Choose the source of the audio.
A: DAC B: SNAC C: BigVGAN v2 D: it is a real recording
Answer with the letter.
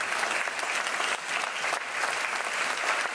D